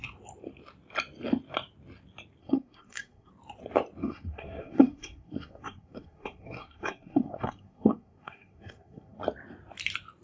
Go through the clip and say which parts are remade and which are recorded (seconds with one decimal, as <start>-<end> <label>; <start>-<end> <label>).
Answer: 0.0-2.4 recorded; 2.4-3.3 remade; 3.3-4.0 recorded; 4.0-9.2 remade; 9.2-10.2 recorded